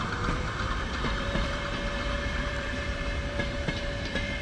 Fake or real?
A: fake